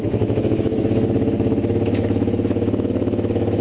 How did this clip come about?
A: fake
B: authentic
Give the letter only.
A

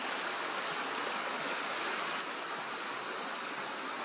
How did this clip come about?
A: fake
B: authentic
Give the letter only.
B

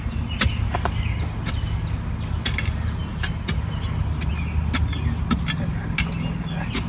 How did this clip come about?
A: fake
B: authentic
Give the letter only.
B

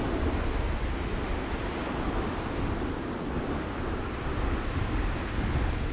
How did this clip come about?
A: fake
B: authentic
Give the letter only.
B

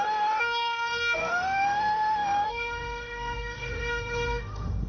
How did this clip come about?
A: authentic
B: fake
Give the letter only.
B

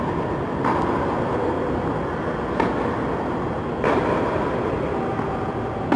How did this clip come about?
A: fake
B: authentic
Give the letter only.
B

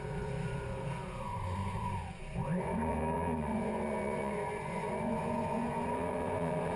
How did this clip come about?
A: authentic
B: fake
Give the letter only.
B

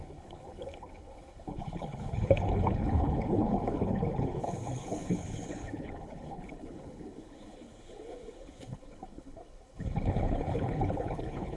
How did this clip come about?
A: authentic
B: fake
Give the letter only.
B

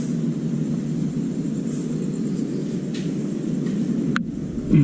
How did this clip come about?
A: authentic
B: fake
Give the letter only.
A